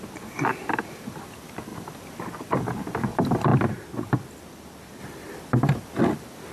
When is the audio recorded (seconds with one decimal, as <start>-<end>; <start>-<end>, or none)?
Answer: 0.0-6.5